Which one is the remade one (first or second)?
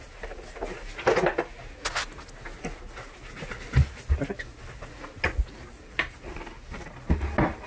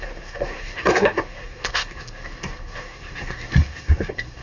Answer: second